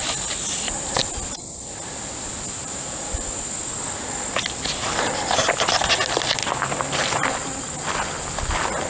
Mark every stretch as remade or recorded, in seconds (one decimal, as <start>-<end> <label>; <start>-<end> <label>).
0.0-8.9 recorded